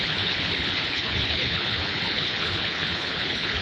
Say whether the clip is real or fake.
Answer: fake